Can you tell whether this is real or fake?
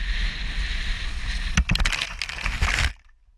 real